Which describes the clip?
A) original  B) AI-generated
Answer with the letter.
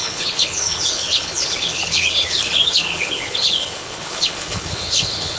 B